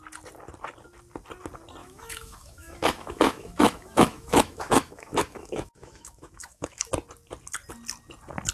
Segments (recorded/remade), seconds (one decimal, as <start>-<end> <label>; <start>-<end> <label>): 0.0-1.8 recorded; 1.8-6.9 remade; 6.9-8.5 recorded